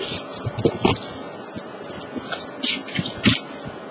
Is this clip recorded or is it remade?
recorded